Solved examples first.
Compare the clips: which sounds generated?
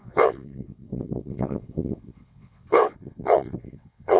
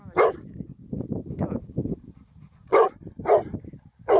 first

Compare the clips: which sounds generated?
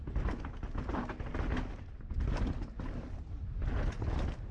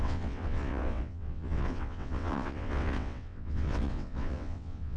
second